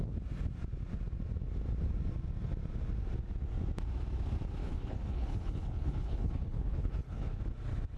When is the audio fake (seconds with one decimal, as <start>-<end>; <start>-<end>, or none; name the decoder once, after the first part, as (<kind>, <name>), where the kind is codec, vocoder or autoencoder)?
4.6-7.4 (codec, HILCodec)

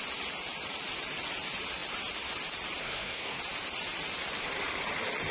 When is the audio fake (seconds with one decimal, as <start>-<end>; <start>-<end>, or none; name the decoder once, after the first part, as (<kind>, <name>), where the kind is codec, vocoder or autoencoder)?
2.8-3.4 (codec, SNAC)

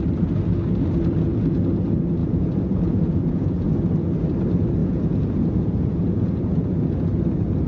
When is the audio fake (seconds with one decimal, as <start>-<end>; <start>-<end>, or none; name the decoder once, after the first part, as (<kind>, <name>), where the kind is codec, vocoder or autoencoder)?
2.2-3.7 (vocoder, Vocos); 4.8-7.1